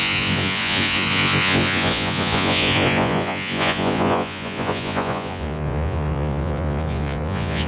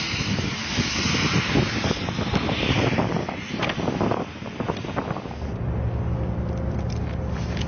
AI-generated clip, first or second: first